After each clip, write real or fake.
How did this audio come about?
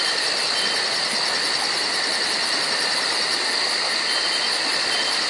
real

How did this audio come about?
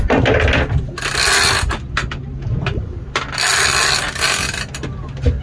real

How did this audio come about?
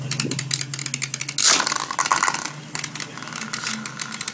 real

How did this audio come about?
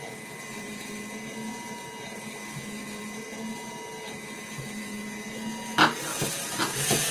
real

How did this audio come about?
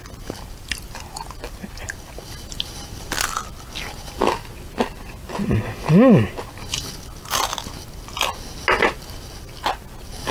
real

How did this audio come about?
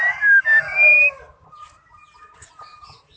real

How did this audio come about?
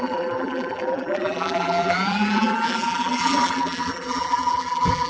fake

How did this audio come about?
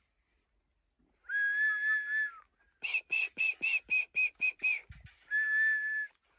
real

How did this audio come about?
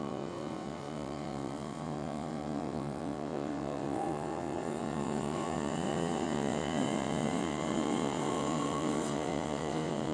fake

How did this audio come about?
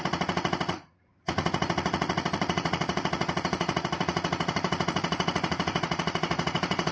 fake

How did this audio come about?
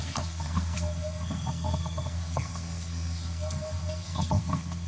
fake